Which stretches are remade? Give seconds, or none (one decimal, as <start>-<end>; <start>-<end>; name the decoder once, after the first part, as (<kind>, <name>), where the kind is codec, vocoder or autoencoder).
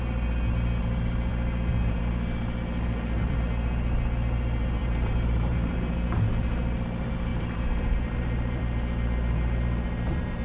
4.8-5.8 (vocoder, BigVGAN v2); 7.3-8.6